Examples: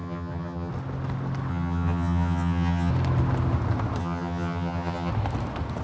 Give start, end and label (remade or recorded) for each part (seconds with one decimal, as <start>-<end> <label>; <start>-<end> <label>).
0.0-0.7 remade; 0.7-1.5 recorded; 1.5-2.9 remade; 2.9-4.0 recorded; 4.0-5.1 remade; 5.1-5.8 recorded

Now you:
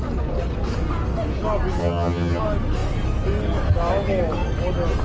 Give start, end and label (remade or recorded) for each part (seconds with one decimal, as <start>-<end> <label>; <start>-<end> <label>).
0.0-1.8 recorded; 1.8-2.4 remade; 2.4-5.0 recorded

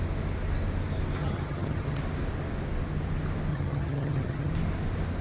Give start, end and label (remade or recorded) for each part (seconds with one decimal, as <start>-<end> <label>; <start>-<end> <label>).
0.0-1.2 recorded; 1.2-2.0 remade; 2.0-3.5 recorded; 3.5-4.5 remade; 4.5-5.2 recorded